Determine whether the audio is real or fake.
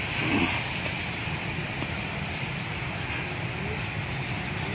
real